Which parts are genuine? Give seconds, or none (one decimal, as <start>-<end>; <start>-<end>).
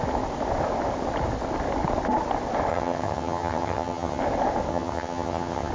0.0-2.7; 4.2-4.7